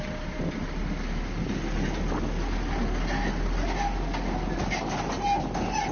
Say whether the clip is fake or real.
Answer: real